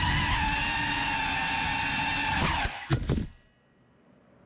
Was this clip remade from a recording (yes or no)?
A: no